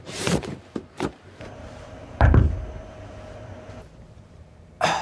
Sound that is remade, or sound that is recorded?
remade